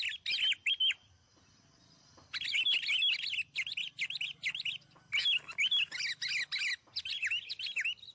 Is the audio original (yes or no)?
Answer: yes